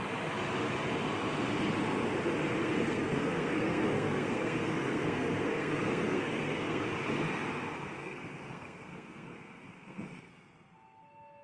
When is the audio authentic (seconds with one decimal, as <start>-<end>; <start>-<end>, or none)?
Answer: 0.0-2.6; 6.8-8.0; 10.3-11.4